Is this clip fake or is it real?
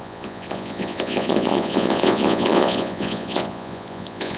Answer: fake